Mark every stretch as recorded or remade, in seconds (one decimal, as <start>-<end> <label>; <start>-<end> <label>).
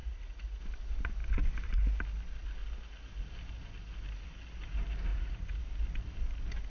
0.0-0.6 remade; 0.6-5.1 recorded; 5.1-5.6 remade; 5.6-6.7 recorded